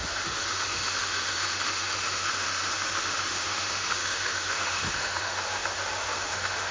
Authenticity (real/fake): fake